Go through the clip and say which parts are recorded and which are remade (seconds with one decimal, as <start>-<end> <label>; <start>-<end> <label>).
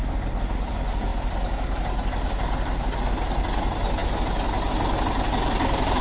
0.0-6.0 recorded